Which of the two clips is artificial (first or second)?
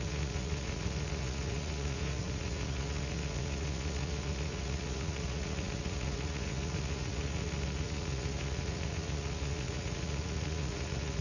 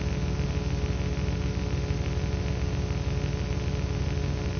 first